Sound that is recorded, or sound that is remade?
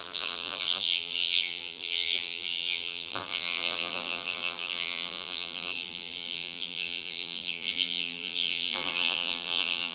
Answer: remade